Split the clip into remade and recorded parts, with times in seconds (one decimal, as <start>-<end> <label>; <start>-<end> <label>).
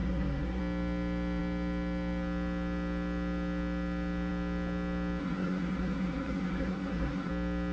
0.0-0.6 remade; 0.6-5.2 recorded; 5.2-7.3 remade; 7.3-7.7 recorded